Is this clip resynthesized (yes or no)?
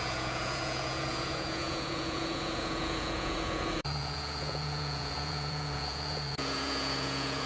yes